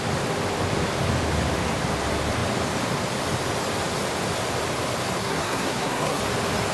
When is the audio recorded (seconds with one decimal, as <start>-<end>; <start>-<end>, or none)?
0.0-5.2; 6.2-6.7